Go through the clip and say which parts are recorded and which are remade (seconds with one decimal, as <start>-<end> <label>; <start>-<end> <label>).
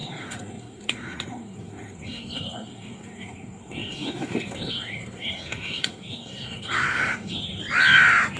0.0-7.6 remade; 7.6-8.4 recorded